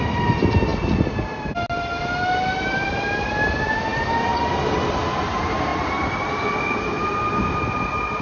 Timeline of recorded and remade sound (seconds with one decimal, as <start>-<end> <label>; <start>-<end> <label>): 0.0-8.2 recorded